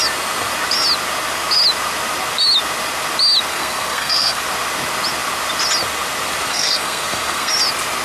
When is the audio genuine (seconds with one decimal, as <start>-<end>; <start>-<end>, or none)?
0.0-3.5; 4.4-6.5; 7.5-8.0

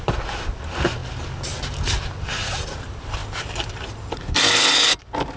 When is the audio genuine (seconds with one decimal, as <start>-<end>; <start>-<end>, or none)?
0.0-5.4